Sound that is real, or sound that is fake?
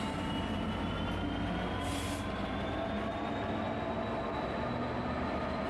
real